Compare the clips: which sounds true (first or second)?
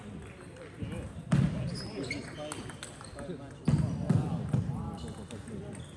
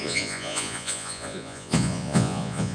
first